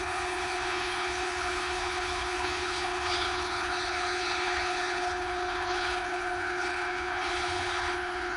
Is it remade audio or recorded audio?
remade